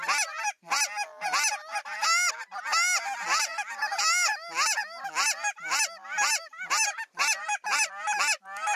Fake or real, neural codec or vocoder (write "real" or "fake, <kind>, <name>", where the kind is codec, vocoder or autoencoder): real